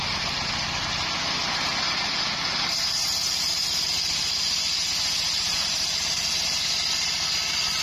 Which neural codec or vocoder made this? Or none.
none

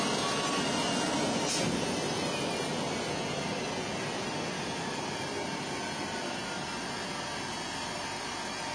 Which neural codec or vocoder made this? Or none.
none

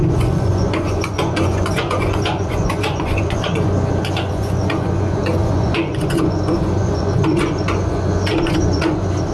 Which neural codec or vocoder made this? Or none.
vocoder, Vocos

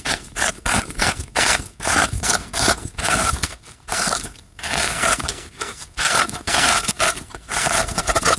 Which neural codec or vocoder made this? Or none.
codec, SNAC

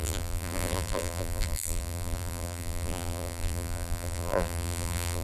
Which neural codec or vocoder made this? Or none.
vocoder, BigVGAN v2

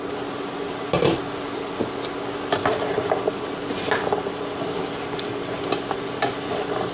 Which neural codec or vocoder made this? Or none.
none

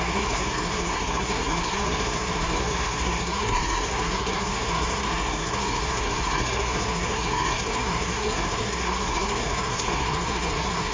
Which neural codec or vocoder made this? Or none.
codec, SNAC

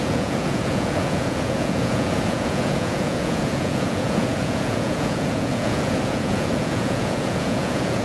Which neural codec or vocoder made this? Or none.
vocoder, Vocos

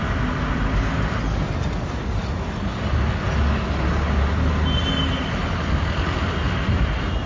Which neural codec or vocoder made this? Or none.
none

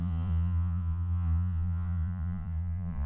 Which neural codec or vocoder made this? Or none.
vocoder, Vocos